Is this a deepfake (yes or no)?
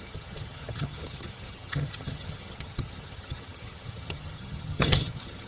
yes